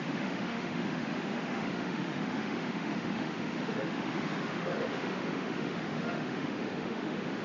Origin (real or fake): fake